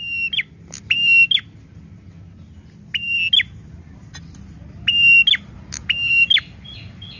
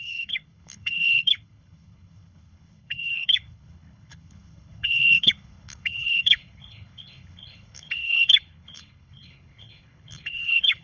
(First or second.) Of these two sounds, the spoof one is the second